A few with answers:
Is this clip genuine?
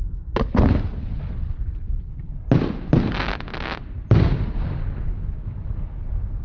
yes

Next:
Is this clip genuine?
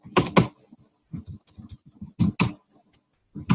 yes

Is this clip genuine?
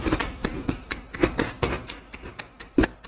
yes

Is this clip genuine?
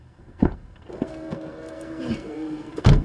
no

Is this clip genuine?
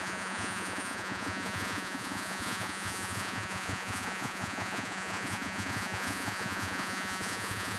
no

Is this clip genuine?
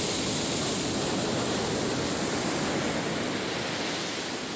yes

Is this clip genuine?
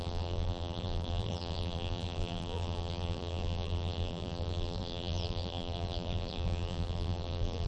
no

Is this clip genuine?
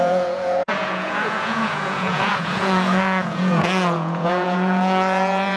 no